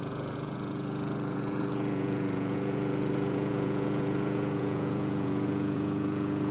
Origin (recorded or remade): remade